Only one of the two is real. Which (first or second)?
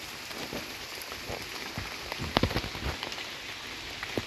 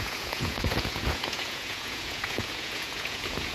first